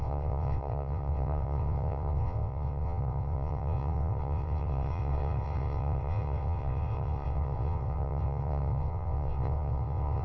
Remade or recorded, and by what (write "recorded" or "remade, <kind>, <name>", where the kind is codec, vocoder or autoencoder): remade, vocoder, WaveNeXt